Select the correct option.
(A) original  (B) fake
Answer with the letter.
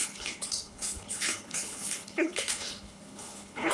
B